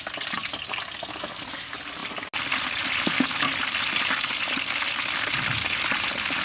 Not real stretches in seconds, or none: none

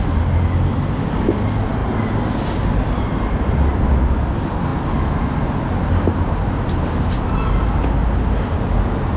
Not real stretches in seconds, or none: none

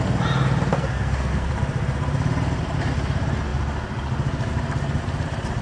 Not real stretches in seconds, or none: 0.7-1.5 (codec, SNAC)

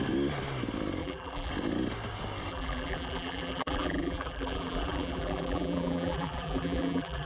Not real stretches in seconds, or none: 1.0-1.5 (vocoder, BigVGAN v2); 2.5-7.3

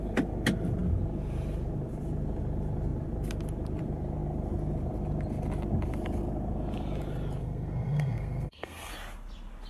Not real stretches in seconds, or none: 7.4-8.9 (codec, SNAC)

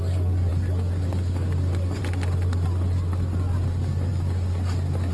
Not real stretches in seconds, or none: none

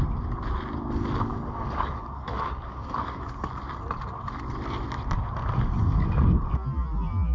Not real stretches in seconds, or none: 1.3-3.5 (codec, DAC)

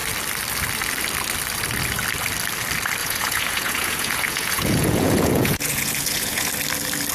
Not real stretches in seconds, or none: 3.0-6.5 (vocoder, Vocos)